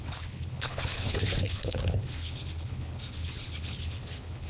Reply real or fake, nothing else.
fake